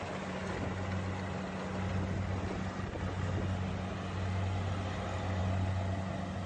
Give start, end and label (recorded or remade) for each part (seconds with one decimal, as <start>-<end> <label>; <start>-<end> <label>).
0.0-6.5 recorded